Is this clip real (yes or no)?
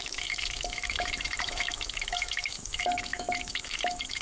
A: no